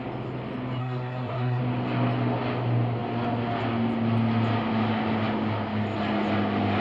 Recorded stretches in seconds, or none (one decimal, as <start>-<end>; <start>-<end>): 0.0-0.8; 1.6-6.8